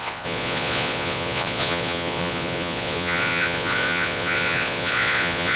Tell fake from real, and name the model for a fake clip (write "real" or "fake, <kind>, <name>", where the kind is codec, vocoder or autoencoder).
fake, vocoder, Vocos